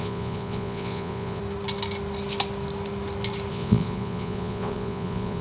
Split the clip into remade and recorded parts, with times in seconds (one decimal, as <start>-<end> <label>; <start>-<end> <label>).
0.0-1.4 remade; 1.4-3.5 recorded; 3.5-5.4 remade